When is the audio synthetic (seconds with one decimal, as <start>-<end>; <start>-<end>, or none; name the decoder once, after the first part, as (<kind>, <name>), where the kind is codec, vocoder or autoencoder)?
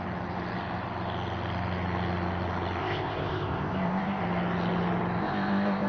2.8-4.2 (codec, ZipCodec); 5.2-5.9